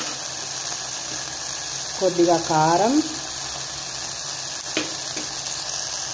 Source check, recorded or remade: recorded